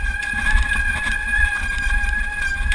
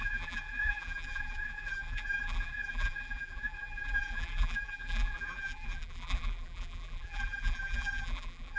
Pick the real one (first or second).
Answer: first